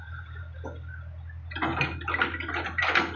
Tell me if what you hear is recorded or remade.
recorded